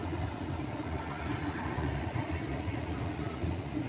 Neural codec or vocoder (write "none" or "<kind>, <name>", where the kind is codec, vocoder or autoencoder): vocoder, Vocos